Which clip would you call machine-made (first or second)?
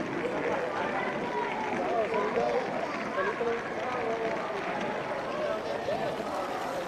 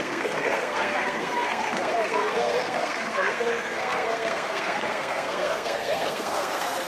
second